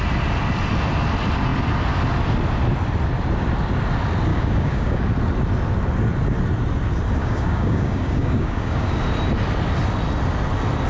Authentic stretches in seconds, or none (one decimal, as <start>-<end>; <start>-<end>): 0.0-4.3; 5.0-7.2; 8.9-10.9